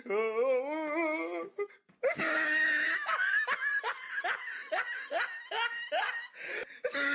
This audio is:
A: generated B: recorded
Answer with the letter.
B